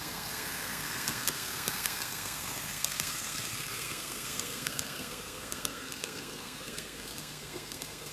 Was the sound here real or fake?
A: fake